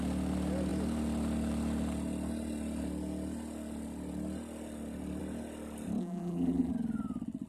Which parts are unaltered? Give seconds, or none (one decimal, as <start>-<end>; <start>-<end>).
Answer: 0.0-6.0; 6.7-7.5